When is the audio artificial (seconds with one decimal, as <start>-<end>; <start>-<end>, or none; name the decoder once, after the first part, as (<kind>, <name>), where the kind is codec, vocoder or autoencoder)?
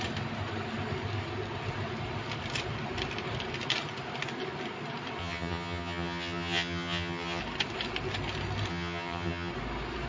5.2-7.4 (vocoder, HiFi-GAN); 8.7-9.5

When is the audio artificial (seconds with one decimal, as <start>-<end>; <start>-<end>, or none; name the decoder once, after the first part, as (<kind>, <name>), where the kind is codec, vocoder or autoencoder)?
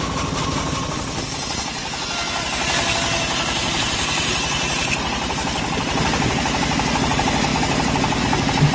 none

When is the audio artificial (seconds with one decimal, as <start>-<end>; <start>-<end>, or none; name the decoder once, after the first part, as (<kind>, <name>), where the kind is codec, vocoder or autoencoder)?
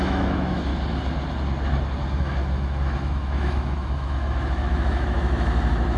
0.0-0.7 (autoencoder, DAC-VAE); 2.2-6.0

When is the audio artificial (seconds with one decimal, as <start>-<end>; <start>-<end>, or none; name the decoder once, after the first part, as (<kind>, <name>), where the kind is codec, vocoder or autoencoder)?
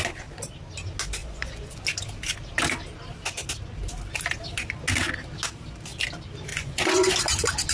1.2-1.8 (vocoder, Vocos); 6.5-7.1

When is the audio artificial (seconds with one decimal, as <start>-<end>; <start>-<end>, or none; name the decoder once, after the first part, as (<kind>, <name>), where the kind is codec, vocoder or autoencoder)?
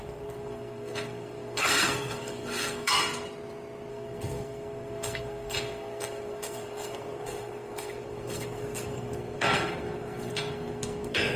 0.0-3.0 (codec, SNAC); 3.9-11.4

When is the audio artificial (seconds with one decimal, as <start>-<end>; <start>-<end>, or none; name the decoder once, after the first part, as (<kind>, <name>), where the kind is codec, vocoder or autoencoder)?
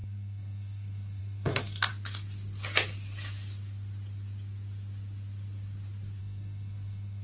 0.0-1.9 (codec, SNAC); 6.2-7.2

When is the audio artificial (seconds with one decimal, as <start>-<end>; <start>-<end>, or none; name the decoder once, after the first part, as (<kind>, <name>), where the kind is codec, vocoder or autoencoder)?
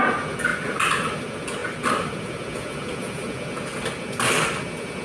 none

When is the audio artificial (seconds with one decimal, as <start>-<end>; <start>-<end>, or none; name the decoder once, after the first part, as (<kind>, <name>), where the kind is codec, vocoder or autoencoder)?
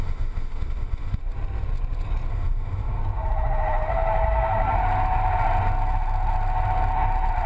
0.0-1.2 (autoencoder, DAC-VAE); 2.3-3.0